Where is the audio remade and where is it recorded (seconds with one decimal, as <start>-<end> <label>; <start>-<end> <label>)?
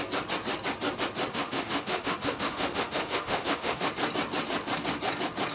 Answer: 0.0-1.3 recorded; 1.3-3.9 remade; 3.9-5.5 recorded